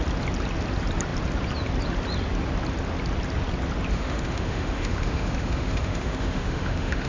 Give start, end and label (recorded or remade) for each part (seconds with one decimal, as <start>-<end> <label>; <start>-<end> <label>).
0.0-3.9 recorded; 3.9-7.1 remade